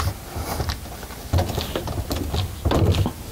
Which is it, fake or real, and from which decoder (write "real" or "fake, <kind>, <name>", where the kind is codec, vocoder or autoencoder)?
real